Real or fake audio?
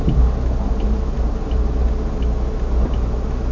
real